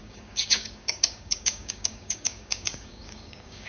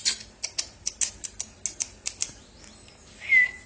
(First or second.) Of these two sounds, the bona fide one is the second